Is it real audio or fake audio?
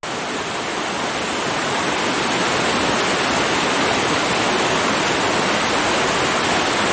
real